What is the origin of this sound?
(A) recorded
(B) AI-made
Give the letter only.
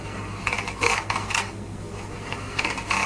B